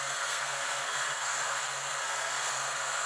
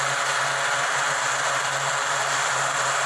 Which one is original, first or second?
second